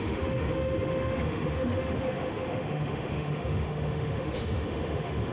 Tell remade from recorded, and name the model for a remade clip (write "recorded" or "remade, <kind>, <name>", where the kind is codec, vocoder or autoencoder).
remade, autoencoder, DAC-VAE